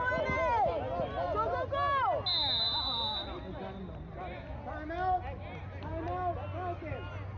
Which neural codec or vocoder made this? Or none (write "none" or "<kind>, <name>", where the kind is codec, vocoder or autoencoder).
none